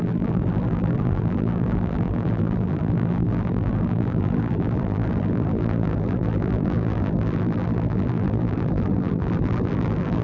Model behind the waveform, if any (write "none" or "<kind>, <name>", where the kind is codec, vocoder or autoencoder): vocoder, BigVGAN v2